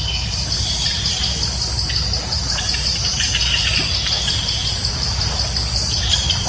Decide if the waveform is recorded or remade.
recorded